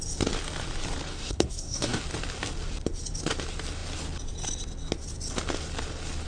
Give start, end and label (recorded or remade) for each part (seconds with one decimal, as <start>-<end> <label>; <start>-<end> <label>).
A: 0.0-1.1 recorded; 1.1-2.0 remade; 2.0-6.3 recorded